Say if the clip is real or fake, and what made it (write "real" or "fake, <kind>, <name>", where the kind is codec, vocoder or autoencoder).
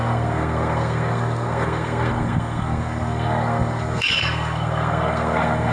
fake, codec, SNAC